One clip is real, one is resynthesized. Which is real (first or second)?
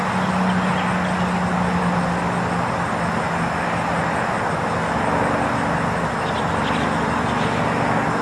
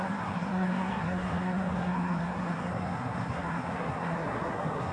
first